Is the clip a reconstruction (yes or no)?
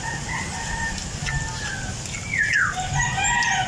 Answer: no